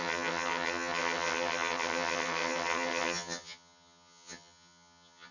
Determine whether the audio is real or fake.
fake